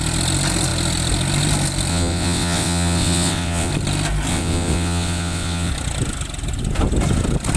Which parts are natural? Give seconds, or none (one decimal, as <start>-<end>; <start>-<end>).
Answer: 0.0-1.9; 3.7-4.3; 5.7-7.6